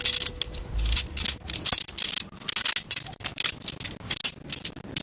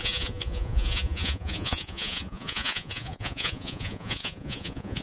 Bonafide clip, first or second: first